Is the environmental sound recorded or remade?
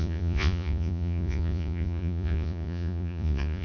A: remade